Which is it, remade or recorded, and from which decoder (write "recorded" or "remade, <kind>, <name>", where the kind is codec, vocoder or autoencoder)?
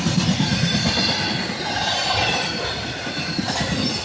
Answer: recorded